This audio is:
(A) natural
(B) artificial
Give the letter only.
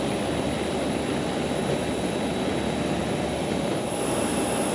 A